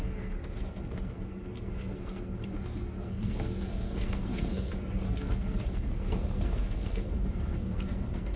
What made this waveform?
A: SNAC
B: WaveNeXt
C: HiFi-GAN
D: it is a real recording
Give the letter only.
A